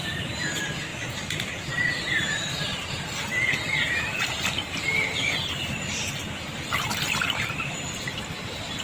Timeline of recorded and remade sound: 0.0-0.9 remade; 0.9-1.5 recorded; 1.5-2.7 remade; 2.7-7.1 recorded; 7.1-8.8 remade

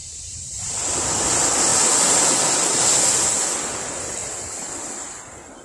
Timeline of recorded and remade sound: 0.0-0.7 remade; 0.7-5.6 recorded

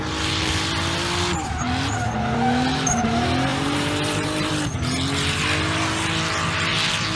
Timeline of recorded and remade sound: 0.0-3.5 recorded; 3.5-4.5 remade; 4.5-7.2 recorded